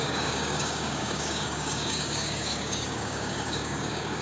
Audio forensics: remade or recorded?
remade